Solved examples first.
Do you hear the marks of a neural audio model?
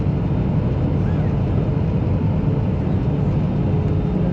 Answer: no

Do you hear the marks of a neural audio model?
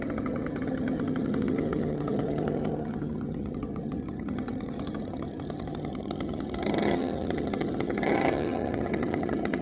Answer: yes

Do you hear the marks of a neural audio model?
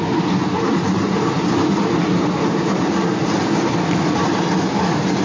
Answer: no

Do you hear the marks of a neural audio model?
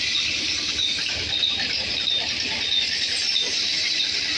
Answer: yes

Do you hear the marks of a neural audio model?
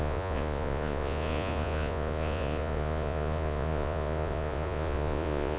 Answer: yes